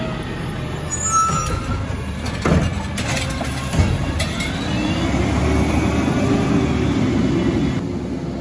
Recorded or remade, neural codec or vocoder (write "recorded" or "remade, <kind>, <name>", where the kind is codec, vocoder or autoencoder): recorded